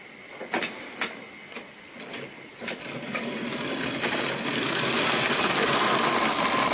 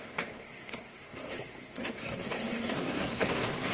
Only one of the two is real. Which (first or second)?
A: first